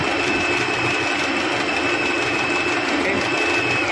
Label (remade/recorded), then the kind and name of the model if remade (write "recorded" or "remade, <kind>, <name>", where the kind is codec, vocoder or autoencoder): recorded